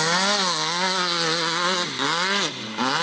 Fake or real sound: real